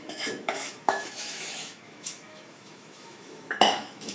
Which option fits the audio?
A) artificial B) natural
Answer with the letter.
A